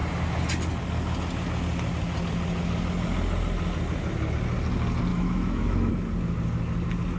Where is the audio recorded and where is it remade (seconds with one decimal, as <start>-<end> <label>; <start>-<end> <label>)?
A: 0.0-5.1 recorded; 5.1-5.9 remade; 5.9-7.2 recorded

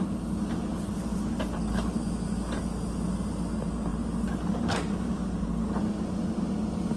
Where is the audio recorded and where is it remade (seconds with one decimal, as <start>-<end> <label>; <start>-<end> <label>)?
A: 0.0-7.0 recorded

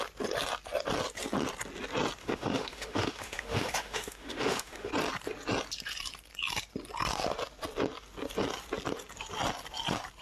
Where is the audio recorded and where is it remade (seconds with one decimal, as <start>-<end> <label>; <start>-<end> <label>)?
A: 0.0-2.2 recorded; 2.2-4.9 remade; 4.9-10.2 recorded

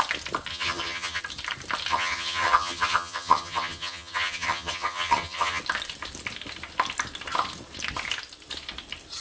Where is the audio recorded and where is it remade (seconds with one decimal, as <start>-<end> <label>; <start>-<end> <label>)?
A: 0.0-0.5 recorded; 0.5-1.2 remade; 1.2-1.9 recorded; 1.9-5.6 remade; 5.6-9.2 recorded

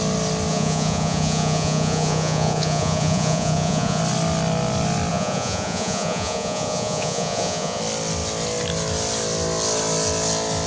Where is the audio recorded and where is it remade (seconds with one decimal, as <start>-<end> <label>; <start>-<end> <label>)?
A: 0.0-0.5 recorded; 0.5-4.0 remade; 4.0-5.1 recorded; 5.1-7.8 remade; 7.8-10.7 recorded

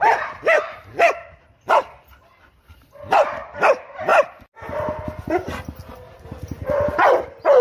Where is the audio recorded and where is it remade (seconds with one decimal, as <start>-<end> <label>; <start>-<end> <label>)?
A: 0.0-7.6 recorded